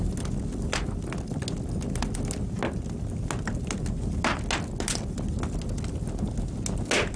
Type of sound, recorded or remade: recorded